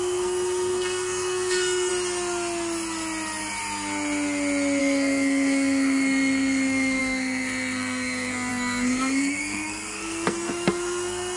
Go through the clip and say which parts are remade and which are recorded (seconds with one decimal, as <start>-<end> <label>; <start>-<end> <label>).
0.0-1.9 remade; 1.9-4.8 recorded; 4.8-11.4 remade